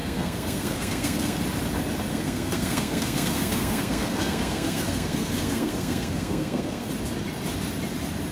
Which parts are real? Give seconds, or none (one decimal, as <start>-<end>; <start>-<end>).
1.4-2.1; 6.9-8.3